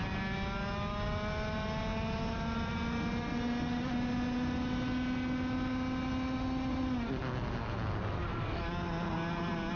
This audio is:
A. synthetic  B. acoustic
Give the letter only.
B